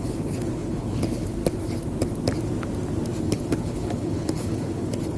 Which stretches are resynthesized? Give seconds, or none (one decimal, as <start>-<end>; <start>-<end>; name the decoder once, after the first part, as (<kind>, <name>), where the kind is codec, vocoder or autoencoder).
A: 0.0-1.4 (codec, HILCodec); 3.2-5.2